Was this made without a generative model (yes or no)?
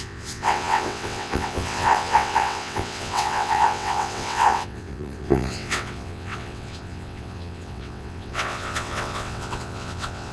no